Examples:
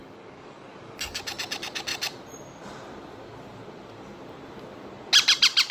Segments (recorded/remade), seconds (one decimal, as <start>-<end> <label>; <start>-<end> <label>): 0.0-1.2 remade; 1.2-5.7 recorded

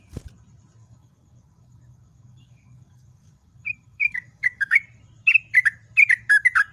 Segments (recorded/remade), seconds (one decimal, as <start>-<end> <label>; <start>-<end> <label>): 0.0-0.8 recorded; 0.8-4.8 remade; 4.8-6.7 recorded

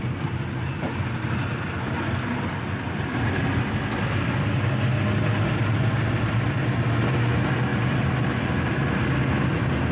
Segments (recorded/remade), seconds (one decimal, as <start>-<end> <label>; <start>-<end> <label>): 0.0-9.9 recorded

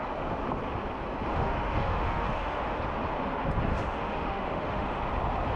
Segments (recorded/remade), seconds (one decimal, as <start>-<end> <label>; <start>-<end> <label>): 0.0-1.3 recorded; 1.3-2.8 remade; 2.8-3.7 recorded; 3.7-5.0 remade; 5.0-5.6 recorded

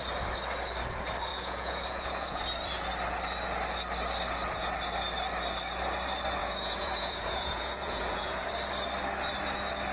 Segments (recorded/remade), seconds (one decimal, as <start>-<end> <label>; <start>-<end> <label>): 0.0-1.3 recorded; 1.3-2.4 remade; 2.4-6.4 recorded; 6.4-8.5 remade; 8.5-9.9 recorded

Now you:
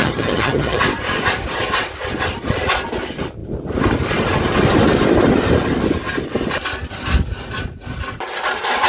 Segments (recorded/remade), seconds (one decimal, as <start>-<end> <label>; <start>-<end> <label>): 0.0-0.8 remade; 0.8-8.9 recorded

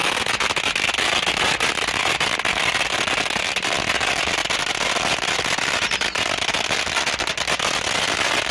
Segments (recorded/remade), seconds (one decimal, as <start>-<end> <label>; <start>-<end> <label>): 0.0-8.5 recorded

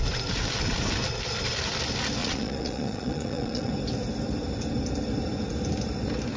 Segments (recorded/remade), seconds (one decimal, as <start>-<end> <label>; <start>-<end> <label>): 0.0-2.2 recorded; 2.2-3.7 remade; 3.7-6.4 recorded